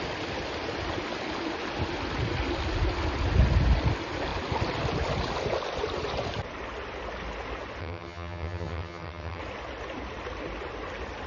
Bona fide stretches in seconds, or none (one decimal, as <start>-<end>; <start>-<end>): 0.0-7.8; 9.4-11.3